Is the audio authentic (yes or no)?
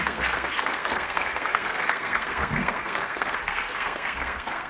no